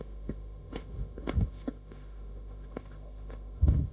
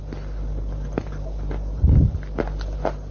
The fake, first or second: first